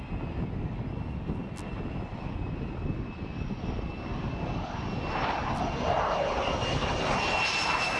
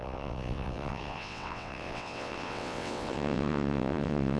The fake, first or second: second